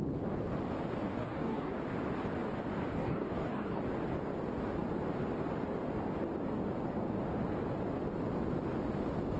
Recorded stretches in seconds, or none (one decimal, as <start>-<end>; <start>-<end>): 0.0-1.1; 1.7-2.9; 3.8-9.4